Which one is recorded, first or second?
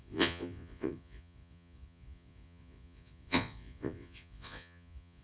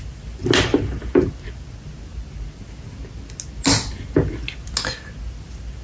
second